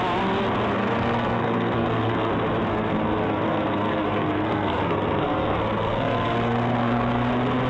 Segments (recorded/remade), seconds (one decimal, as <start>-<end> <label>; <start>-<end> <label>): 0.0-0.7 recorded; 0.7-2.3 remade; 2.3-2.7 recorded; 2.7-7.3 remade; 7.3-7.7 recorded